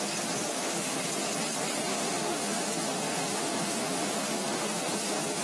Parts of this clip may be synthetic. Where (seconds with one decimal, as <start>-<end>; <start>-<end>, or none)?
0.5-1.1; 1.9-5.4